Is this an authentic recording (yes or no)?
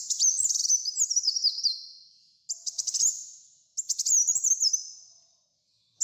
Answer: yes